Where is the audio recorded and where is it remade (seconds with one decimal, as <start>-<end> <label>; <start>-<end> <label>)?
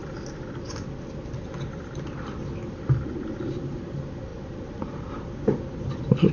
0.0-4.3 recorded; 4.3-6.3 remade